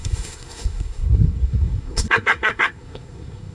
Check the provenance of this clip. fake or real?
fake